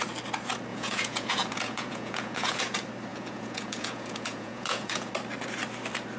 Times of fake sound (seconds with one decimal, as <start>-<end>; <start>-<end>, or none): 0.7-2.6; 3.1-5.1